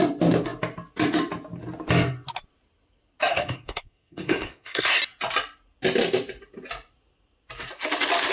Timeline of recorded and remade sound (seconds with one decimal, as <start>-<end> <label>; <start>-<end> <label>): 0.0-3.3 recorded; 3.3-5.0 remade; 5.0-8.3 recorded